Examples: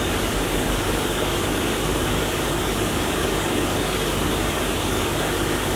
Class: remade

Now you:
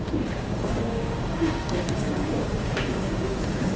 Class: remade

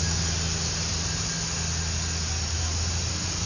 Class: recorded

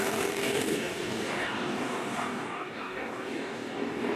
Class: remade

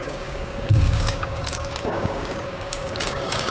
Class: remade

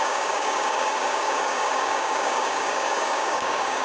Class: remade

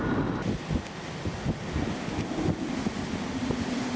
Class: recorded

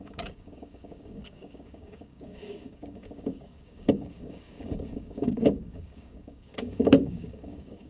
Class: remade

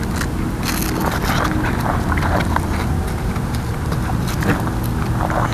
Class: recorded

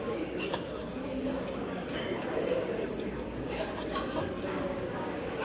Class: remade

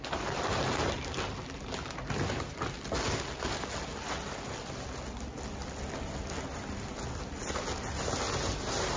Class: recorded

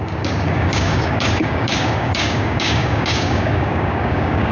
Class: remade